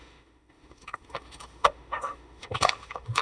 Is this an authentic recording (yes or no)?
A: no